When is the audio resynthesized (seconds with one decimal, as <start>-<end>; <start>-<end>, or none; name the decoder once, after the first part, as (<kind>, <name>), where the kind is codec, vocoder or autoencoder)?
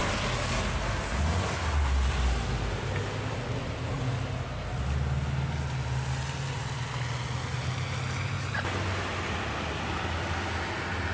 none